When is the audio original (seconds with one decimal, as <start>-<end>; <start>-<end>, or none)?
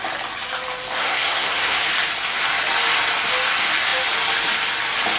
0.0-1.0; 1.8-5.2